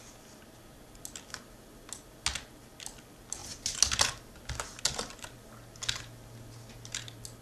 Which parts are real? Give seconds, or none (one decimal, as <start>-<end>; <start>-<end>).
0.0-7.4